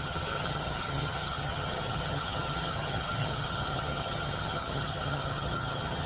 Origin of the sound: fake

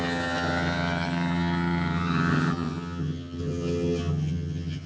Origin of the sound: fake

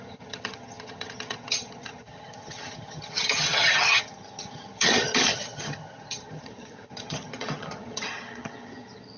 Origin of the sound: fake